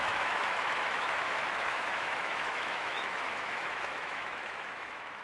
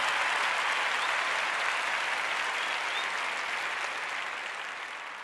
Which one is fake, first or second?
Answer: first